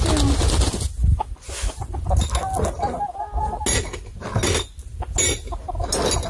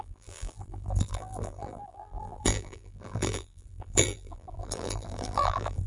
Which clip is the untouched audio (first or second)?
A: first